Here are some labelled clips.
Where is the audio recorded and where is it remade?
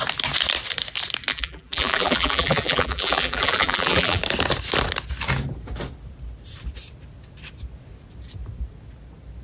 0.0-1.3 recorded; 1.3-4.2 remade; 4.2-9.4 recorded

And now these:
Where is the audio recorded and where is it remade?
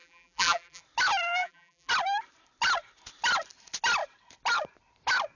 0.0-0.8 remade; 0.8-1.4 recorded; 1.4-1.9 remade; 1.9-5.4 recorded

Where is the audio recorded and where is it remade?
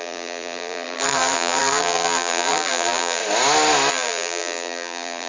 0.0-3.2 remade; 3.2-3.9 recorded; 3.9-5.3 remade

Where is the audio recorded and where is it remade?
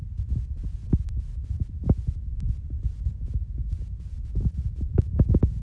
0.0-5.6 recorded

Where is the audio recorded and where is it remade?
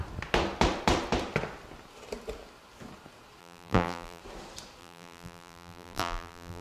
0.0-3.4 recorded; 3.4-4.2 remade; 4.2-4.8 recorded; 4.8-6.6 remade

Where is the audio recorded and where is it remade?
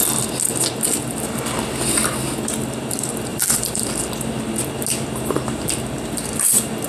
0.0-3.3 recorded; 3.3-4.0 remade; 4.0-6.9 recorded